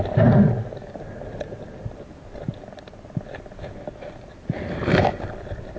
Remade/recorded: recorded